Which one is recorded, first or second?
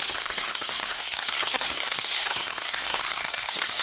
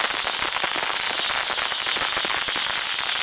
second